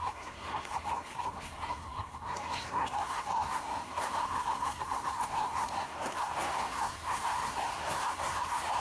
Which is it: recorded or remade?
remade